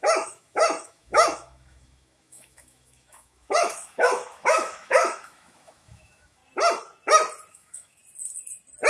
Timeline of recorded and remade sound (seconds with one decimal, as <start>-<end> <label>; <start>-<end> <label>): 0.0-6.4 remade; 6.4-7.5 recorded; 7.5-8.0 remade; 8.0-8.9 recorded